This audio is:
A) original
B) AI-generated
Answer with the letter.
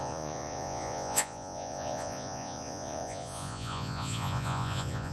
B